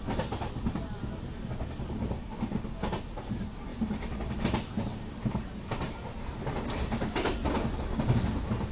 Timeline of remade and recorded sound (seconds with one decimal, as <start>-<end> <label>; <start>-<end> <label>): 0.0-8.7 recorded